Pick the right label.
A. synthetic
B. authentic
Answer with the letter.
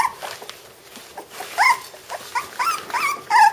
B